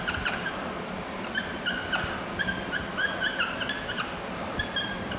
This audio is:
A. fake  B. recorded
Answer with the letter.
B